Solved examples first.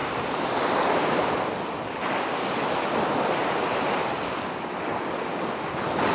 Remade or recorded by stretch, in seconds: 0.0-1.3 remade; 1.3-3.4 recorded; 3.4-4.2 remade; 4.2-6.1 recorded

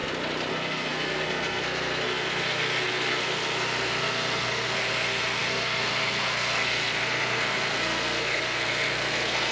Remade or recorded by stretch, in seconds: 0.0-0.5 recorded; 0.5-9.5 remade

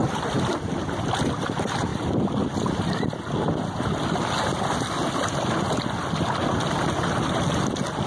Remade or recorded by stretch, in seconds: 0.0-8.1 recorded

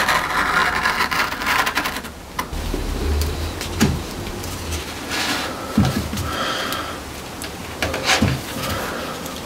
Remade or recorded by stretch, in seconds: 0.0-9.5 recorded